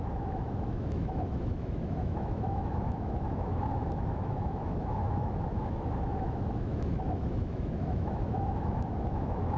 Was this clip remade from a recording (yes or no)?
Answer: yes